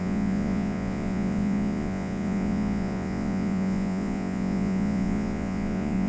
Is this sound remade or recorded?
remade